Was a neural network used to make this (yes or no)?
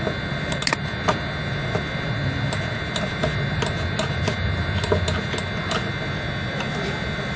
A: no